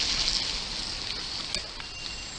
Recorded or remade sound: recorded